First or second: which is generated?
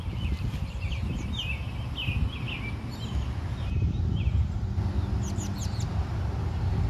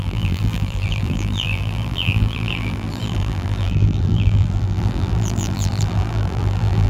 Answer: second